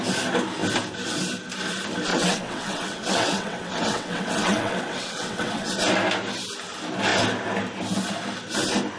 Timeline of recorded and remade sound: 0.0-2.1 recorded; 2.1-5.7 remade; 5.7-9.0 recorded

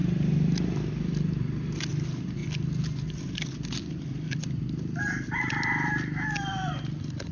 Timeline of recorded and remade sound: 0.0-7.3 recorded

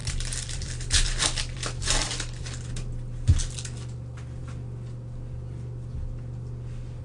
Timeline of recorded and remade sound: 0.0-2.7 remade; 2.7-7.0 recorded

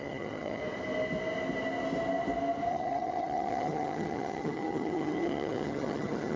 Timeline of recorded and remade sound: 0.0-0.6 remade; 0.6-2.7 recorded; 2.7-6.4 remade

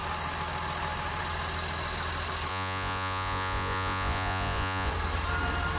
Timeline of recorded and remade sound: 0.0-2.5 recorded; 2.5-4.9 remade; 4.9-5.8 recorded